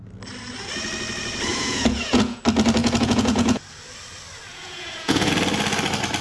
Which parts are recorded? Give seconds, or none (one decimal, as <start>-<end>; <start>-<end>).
0.0-1.5; 2.4-2.8; 3.6-4.5; 5.3-6.2